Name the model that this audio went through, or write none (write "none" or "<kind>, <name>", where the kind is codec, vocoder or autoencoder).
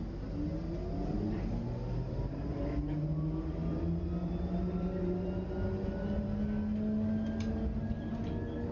none